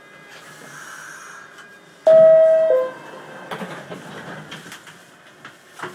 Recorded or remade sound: recorded